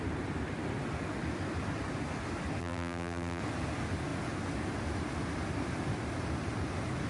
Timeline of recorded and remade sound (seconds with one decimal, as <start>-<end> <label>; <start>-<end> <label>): 0.0-2.6 recorded; 2.6-3.4 remade; 3.4-7.1 recorded